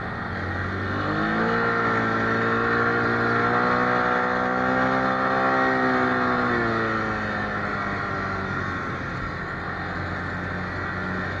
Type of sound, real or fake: real